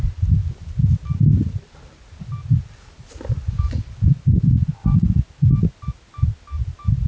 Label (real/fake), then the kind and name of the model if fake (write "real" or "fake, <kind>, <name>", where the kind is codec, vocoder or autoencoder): real